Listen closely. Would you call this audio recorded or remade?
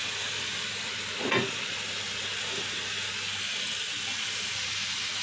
recorded